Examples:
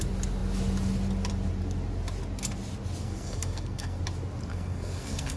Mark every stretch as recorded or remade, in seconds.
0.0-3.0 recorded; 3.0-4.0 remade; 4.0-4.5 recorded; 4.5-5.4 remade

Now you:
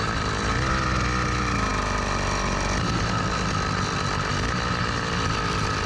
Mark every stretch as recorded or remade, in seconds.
0.0-5.9 recorded

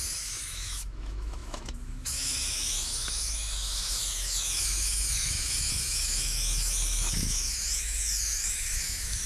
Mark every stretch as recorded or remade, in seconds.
0.0-9.3 remade